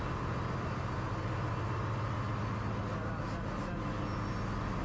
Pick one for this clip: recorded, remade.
recorded